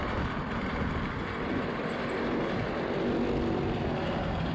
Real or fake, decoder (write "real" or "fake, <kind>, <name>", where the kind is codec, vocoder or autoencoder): real